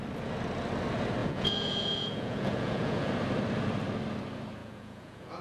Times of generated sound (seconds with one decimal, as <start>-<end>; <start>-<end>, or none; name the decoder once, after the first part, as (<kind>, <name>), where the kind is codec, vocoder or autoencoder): 1.2-3.1 (vocoder, Vocos); 4.6-5.4